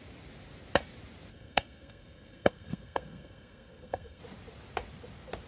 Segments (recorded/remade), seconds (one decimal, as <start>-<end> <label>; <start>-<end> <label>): 0.0-1.3 recorded; 1.3-4.2 remade; 4.2-5.5 recorded